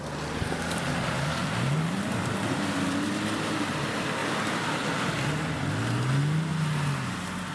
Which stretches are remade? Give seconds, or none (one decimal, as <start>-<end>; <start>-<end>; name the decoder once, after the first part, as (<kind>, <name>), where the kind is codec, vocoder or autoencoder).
1.4-2.6 (vocoder, BigVGAN v2); 4.2-5.6